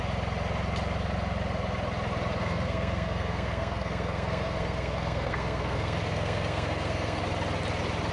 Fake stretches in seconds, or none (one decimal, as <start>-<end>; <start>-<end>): 2.4-7.2